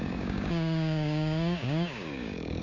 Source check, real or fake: fake